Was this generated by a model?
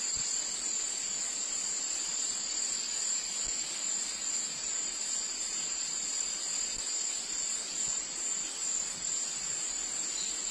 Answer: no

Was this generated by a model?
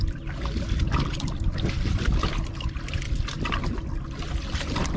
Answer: no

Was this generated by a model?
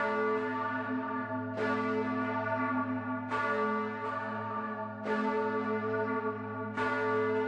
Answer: no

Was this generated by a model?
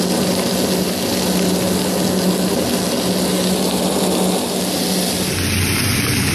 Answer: no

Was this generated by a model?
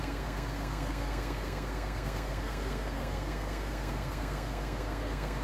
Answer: yes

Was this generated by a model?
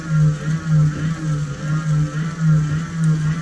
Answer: no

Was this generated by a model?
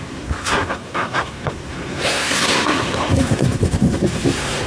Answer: yes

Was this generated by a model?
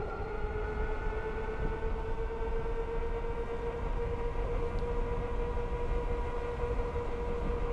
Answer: no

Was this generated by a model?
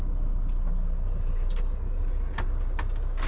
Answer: no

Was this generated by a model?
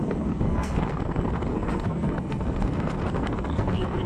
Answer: yes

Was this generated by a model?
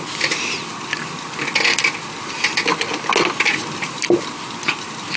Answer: no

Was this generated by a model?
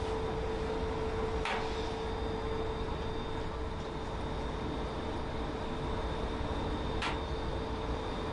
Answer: no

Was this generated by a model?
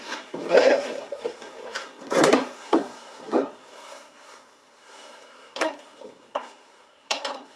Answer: yes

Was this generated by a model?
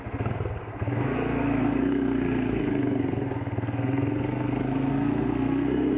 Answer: yes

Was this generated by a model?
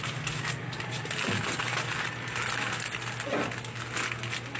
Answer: no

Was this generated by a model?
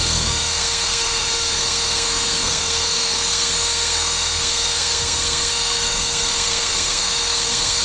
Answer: yes